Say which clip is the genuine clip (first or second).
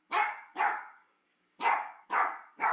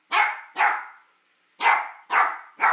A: second